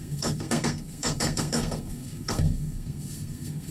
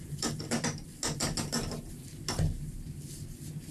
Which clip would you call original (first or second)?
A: second